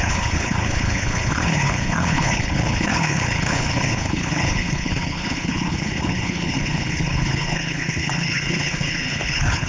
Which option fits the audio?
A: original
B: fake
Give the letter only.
B